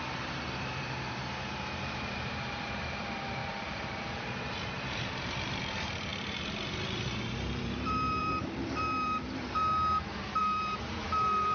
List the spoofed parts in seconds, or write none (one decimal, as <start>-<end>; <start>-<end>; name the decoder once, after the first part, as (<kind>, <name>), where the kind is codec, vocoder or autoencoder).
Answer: 0.0-9.6 (vocoder, BigVGAN v2); 10.4-11.5